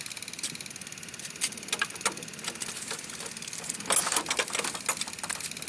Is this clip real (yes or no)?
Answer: yes